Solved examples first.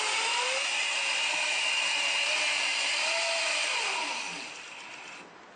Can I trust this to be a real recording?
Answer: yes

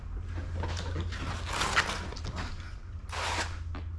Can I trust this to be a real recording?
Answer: yes